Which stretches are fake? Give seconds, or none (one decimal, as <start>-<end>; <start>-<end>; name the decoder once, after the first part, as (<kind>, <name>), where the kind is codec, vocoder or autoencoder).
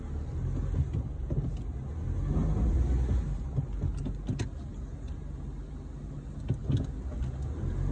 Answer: none